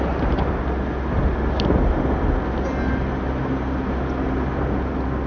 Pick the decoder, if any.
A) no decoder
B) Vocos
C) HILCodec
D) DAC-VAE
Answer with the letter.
A